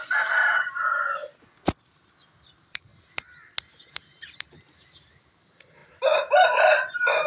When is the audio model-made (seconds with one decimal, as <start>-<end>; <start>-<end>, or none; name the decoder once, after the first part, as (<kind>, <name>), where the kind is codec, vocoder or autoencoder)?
0.0-1.2 (vocoder, BigVGAN v2); 2.3-2.9; 3.8-7.3

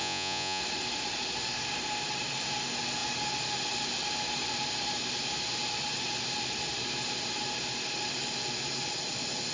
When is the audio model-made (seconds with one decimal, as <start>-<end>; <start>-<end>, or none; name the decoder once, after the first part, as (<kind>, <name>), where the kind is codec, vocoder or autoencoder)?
0.0-0.6 (vocoder, Vocos)

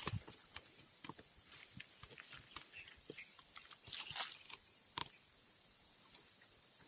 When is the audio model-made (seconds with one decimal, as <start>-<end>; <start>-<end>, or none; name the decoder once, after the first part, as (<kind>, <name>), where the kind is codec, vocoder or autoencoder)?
none

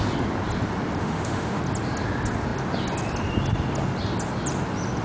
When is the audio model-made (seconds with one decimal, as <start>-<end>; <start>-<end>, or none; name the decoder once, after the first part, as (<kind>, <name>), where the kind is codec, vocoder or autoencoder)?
1.0-1.6 (autoencoder, DAC-VAE)

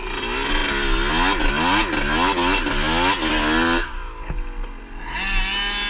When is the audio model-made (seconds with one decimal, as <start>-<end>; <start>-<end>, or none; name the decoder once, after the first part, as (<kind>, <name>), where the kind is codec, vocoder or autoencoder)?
none